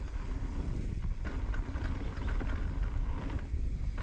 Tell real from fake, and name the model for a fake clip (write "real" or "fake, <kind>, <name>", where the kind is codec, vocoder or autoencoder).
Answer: real